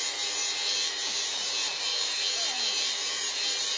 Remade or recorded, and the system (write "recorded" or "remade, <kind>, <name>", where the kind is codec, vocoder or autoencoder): remade, vocoder, BigVGAN v2